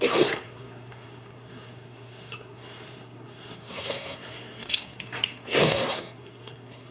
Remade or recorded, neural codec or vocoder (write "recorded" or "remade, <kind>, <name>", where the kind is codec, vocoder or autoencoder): remade, codec, SNAC